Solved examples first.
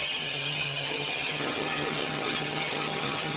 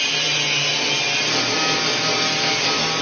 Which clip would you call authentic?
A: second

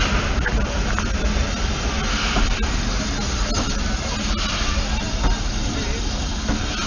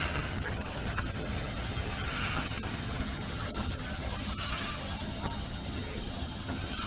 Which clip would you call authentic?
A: first